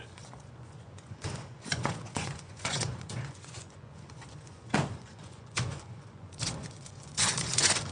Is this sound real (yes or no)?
no